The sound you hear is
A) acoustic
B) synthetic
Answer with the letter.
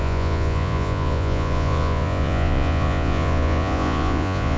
B